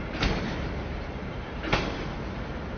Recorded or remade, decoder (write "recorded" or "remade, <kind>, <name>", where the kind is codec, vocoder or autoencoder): recorded